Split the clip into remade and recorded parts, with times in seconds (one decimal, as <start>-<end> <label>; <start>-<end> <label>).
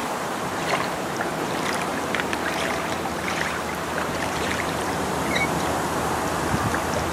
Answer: 0.0-1.5 remade; 1.5-1.9 recorded; 1.9-6.2 remade; 6.2-7.1 recorded